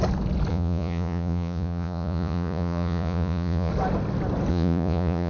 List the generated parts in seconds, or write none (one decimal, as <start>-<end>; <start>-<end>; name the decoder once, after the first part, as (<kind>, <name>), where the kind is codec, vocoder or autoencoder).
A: 0.5-3.7 (vocoder, Vocos); 4.5-5.3

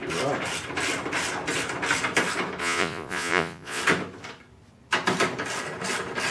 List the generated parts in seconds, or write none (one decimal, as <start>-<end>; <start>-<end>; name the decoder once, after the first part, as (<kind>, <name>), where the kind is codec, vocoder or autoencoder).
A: 2.6-3.8 (vocoder, Vocos)

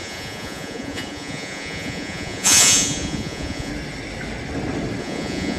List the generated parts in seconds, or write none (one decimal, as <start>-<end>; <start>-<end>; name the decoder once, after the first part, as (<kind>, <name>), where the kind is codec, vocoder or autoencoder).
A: 0.0-3.7 (vocoder, Vocos); 5.0-5.6

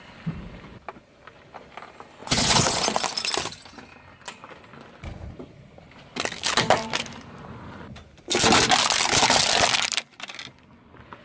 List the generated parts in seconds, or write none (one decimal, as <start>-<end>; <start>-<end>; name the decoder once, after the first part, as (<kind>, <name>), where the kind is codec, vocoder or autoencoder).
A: 2.2-3.0 (vocoder, Vocos)

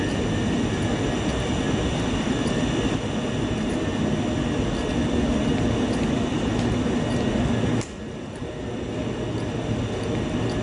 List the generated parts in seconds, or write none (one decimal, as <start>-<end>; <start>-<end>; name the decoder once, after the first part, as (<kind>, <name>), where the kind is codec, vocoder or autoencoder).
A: none

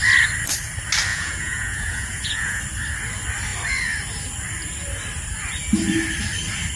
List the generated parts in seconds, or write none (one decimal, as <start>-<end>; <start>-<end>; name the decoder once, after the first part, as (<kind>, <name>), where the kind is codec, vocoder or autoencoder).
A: 1.1-2.6 (vocoder, Vocos)

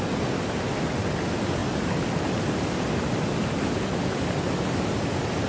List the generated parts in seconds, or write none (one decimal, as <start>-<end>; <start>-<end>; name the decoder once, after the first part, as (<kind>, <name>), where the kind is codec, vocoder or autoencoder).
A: none

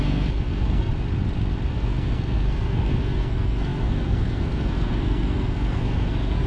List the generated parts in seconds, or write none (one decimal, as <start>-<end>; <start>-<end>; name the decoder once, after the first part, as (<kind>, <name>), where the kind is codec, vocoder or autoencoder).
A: 0.0-0.9 (codec, SNAC); 1.7-6.5